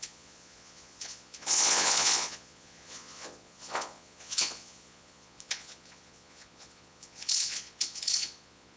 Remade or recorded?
remade